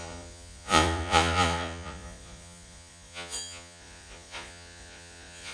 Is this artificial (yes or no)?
yes